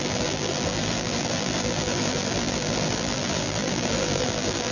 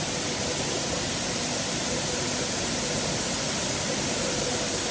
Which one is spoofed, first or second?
first